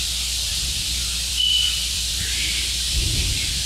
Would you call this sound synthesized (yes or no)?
yes